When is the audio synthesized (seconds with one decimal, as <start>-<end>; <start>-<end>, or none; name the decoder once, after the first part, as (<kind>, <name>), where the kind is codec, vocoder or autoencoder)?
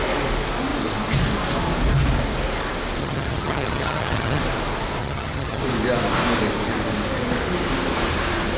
3.0-4.4 (vocoder, HiFi-GAN); 5.0-5.6